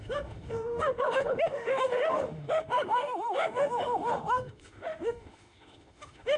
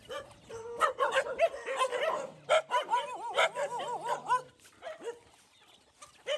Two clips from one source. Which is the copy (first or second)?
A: first